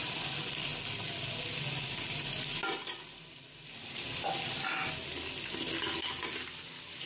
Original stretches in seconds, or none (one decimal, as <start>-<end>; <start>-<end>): 0.0-7.1